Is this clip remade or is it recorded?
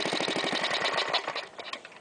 recorded